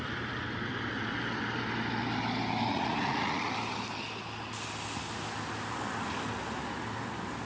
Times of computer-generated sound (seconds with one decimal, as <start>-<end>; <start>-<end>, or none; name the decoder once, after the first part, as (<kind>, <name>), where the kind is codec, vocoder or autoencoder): 2.7-3.5 (vocoder, Vocos)